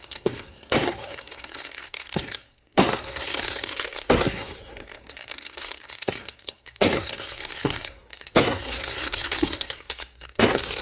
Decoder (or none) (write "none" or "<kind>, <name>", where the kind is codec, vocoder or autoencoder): codec, SNAC